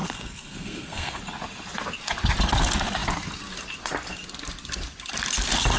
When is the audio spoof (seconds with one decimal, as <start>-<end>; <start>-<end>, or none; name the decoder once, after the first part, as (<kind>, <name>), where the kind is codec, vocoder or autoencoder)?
0.0-1.2 (codec, SNAC)